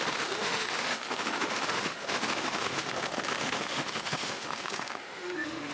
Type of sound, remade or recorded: remade